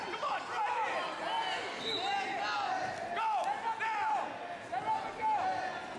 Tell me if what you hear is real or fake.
real